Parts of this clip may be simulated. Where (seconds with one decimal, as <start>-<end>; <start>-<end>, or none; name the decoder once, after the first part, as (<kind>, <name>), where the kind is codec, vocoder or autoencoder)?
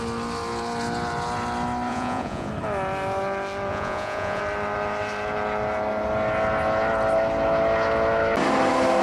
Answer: 1.9-2.5 (vocoder, Vocos); 3.7-4.4